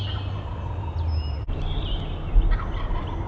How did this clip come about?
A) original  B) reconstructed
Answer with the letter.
A